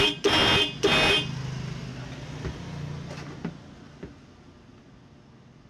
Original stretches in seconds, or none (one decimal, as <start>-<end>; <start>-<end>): 0.0-5.7